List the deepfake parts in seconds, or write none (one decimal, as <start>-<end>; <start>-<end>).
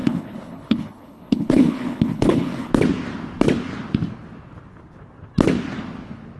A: 0.0-2.7